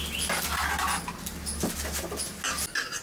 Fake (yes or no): no